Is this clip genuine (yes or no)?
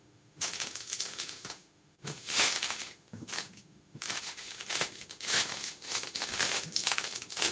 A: no